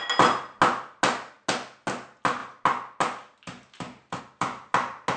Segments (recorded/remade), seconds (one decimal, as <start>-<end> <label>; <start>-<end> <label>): 0.0-5.2 recorded